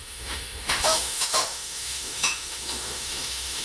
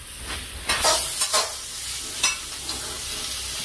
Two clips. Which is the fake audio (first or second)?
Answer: first